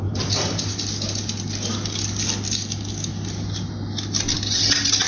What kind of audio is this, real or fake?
real